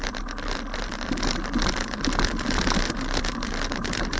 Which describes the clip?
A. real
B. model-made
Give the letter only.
A